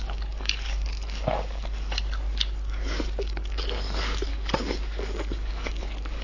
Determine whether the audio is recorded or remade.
remade